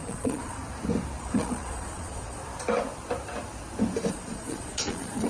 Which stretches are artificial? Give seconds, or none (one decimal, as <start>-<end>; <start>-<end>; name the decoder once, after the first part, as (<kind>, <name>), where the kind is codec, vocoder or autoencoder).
0.0-0.6 (vocoder, Vocos); 1.2-2.4; 4.1-5.3